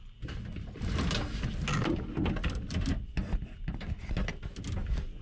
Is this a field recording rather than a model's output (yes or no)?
yes